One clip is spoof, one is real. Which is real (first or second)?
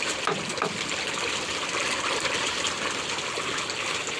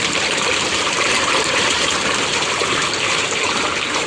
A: first